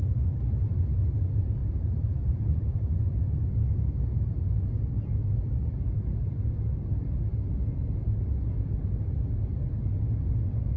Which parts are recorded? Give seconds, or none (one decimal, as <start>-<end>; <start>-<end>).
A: 0.0-1.6; 2.8-5.2; 6.5-8.8; 9.6-10.8